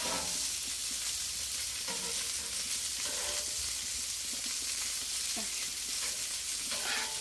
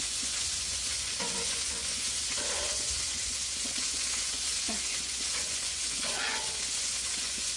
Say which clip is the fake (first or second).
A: second